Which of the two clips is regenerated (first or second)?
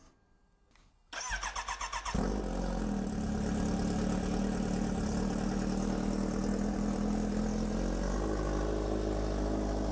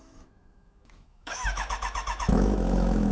second